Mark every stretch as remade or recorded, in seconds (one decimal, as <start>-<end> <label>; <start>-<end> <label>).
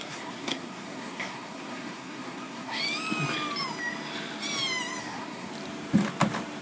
0.0-2.8 remade; 2.8-5.0 recorded; 5.0-5.5 remade; 5.5-6.6 recorded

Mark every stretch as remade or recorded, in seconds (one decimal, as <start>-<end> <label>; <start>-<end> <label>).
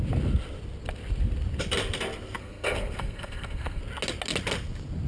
0.0-2.4 recorded; 2.4-3.8 remade; 3.8-5.1 recorded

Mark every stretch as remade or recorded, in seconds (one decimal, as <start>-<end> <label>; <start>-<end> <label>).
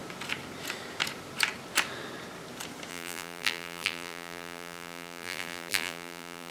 0.0-2.9 recorded; 2.9-6.5 remade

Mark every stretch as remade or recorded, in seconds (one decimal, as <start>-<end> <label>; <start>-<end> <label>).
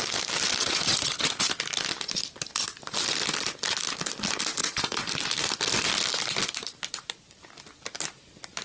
0.0-0.6 recorded; 0.6-1.6 remade; 1.6-4.6 recorded; 4.6-5.2 remade; 5.2-8.6 recorded